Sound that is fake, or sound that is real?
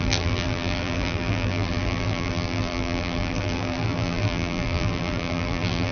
fake